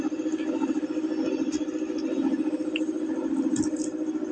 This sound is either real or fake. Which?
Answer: real